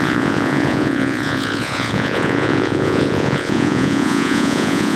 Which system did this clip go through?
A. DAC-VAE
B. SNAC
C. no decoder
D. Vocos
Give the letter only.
D